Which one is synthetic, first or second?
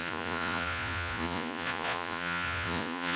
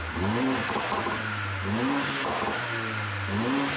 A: first